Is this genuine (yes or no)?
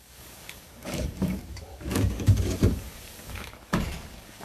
no